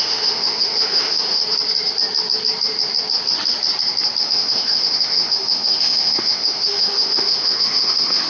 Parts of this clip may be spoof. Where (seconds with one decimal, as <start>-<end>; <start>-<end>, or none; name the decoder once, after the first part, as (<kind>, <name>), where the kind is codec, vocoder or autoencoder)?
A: 0.0-1.4 (autoencoder, DAC-VAE); 4.2-8.3